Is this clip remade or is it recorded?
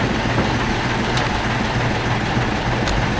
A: recorded